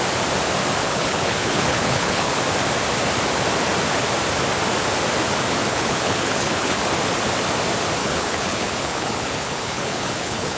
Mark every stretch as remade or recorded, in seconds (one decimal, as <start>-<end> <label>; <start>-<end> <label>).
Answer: 0.0-0.8 recorded; 0.8-2.3 remade; 2.3-5.7 recorded; 5.7-6.8 remade; 6.8-8.0 recorded; 8.0-10.6 remade